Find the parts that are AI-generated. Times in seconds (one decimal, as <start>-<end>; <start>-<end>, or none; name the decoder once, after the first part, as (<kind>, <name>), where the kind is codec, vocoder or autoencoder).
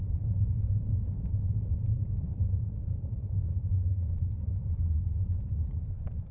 0.0-6.3 (vocoder, BigVGAN v2)